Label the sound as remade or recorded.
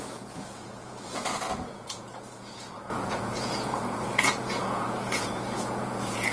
remade